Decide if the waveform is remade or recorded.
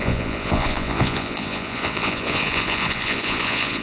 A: remade